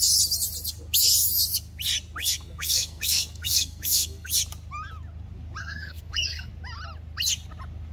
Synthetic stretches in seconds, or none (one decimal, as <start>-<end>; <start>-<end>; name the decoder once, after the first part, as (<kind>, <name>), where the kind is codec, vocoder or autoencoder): 2.2-4.3 (codec, SNAC); 5.6-6.5